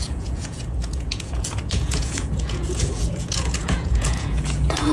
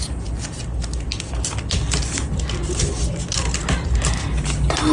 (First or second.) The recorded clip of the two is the second